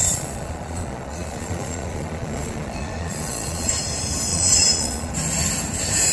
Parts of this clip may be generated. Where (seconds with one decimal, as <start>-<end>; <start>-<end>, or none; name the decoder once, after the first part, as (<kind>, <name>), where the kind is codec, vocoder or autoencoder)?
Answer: 0.0-3.7 (vocoder, Vocos); 4.3-5.1